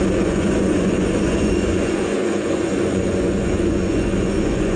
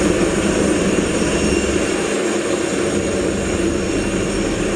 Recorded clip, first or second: second